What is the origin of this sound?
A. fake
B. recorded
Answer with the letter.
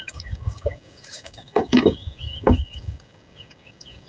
A